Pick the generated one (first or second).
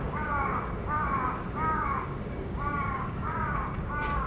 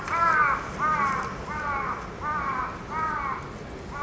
first